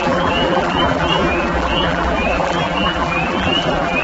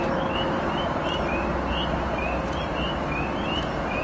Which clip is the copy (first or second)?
first